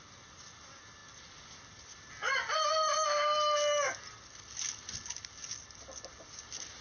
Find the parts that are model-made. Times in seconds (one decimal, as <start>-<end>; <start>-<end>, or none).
none